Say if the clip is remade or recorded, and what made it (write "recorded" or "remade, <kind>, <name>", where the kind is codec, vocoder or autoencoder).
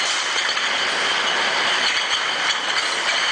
recorded